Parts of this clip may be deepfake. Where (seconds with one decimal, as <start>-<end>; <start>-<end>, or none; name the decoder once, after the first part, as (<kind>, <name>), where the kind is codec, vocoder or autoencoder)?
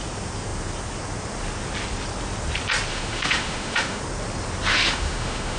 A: 2.9-4.0 (autoencoder, DAC-VAE); 4.7-5.6